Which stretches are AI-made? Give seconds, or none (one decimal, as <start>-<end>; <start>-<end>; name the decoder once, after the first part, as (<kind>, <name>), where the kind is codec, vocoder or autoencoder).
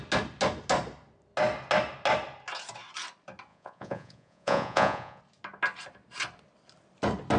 3.5-5.2 (vocoder, Vocos)